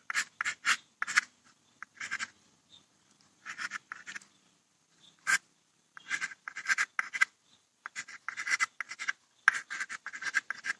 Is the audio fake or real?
real